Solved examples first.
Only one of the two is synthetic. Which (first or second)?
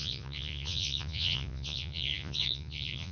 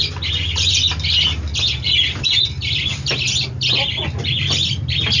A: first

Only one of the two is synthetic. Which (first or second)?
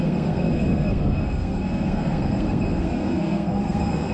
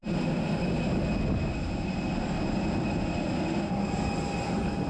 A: first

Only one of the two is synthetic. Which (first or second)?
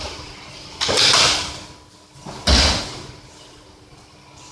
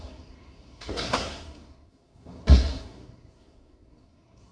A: second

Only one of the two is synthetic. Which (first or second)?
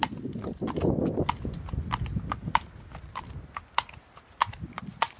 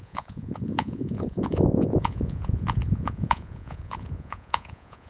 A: second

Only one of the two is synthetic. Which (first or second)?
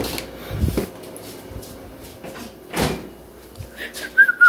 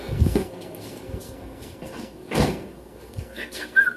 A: second